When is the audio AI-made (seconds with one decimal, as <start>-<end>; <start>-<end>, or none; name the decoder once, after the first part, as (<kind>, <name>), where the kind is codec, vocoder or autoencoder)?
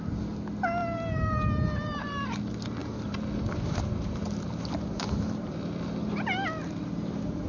0.8-2.4 (vocoder, BigVGAN v2); 2.8-7.5